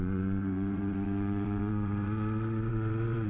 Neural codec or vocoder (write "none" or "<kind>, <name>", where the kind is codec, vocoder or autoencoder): vocoder, WaveNeXt